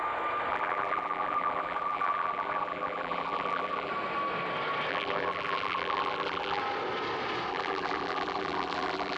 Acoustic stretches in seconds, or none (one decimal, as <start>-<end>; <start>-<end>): 0.0-0.5; 3.9-4.9; 6.6-7.5